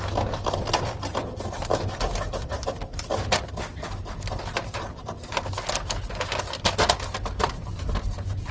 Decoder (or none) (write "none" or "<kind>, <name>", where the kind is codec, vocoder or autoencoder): none